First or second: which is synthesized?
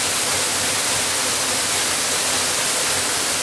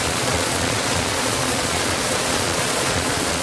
second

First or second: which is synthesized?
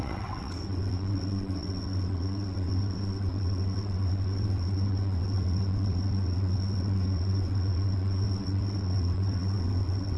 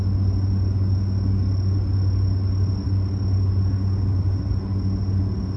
first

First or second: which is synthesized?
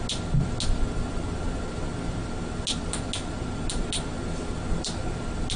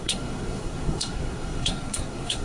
second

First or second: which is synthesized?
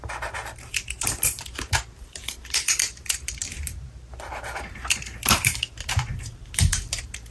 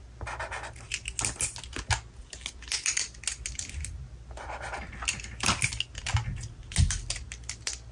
first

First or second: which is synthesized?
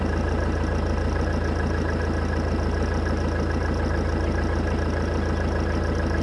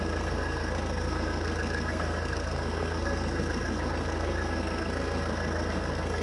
second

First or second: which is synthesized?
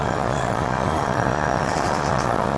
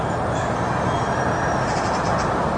first